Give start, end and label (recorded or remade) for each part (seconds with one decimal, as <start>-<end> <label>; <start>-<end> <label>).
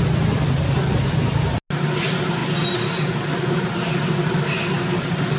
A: 0.0-5.4 recorded